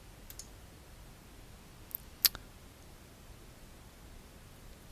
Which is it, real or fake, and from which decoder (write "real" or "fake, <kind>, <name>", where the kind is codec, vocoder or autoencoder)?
real